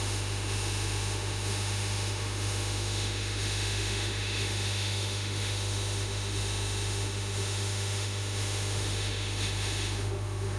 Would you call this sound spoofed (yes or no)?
yes